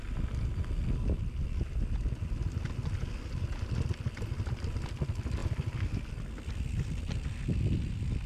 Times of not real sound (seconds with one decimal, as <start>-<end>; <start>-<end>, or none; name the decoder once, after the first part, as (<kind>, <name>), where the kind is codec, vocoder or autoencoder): none